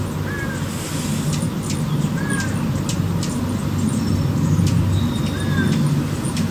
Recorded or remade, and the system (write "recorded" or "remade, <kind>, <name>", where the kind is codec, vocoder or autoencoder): recorded